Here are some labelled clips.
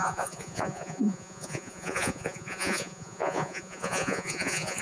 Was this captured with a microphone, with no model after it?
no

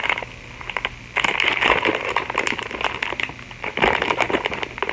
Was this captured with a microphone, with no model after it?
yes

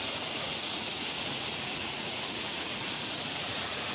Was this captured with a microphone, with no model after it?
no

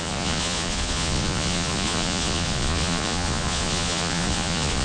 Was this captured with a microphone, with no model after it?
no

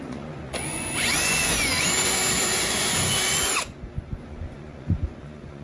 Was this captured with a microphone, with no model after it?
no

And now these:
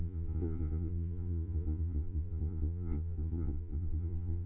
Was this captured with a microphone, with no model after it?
no